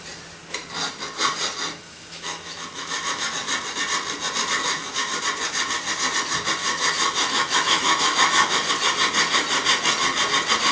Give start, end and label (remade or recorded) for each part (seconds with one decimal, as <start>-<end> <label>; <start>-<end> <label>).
0.0-1.8 recorded; 1.8-3.3 remade; 3.3-4.6 recorded; 4.6-5.2 remade; 5.2-6.6 recorded; 6.6-8.7 remade; 8.7-10.7 recorded